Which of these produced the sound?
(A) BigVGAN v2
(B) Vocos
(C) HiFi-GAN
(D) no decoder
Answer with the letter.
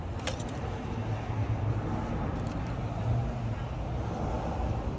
D